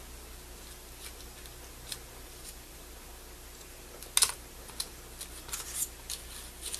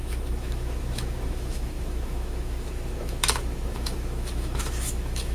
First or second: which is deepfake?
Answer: second